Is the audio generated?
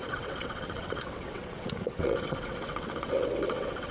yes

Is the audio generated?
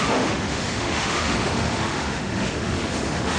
yes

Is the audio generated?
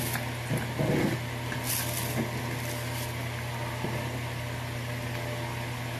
no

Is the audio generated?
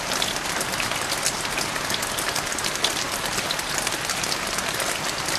no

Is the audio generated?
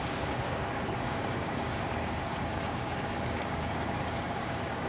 yes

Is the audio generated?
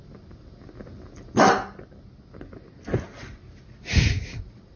no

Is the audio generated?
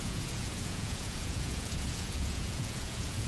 yes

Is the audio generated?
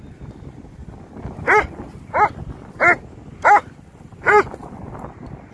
no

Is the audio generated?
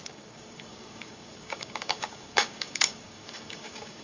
yes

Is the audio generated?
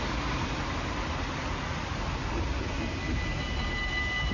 no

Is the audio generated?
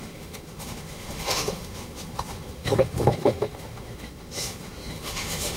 yes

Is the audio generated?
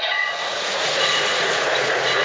yes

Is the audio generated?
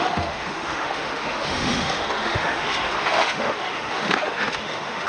yes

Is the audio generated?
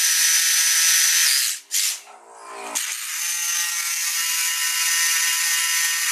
no